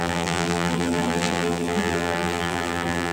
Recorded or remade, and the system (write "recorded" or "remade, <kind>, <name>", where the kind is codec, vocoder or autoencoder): remade, vocoder, BigVGAN v2